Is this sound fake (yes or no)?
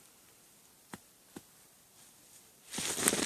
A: no